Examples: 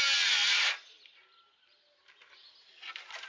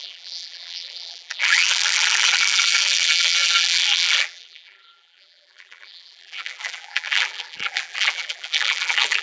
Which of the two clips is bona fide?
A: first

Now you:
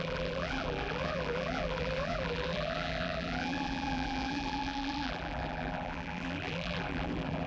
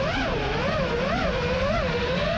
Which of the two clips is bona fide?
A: second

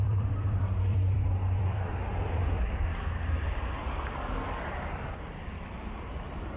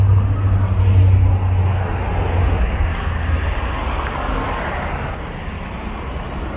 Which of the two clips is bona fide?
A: second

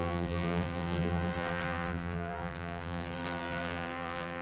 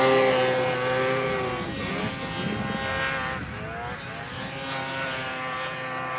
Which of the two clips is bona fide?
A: second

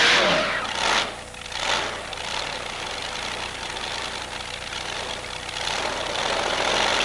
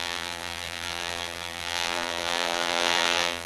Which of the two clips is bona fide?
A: first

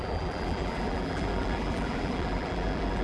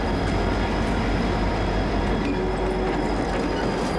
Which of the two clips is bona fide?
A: second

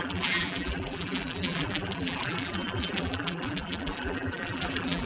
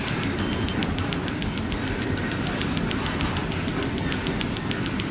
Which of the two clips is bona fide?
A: second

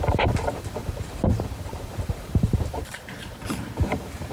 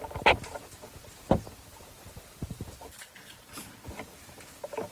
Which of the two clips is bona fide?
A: second